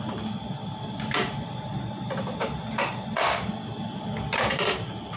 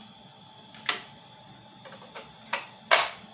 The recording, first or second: second